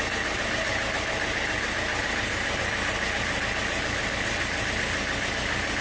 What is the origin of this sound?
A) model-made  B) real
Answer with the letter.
B